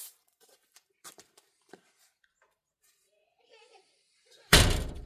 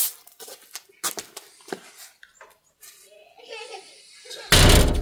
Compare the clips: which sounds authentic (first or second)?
second